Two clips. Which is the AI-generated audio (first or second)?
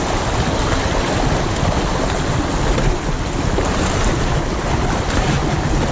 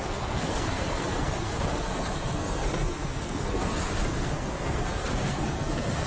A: second